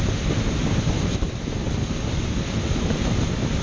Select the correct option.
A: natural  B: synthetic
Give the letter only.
A